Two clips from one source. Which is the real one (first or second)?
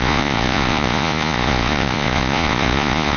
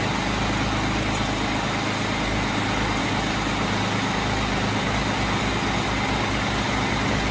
second